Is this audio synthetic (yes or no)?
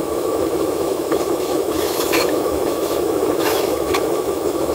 yes